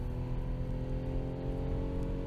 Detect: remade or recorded recorded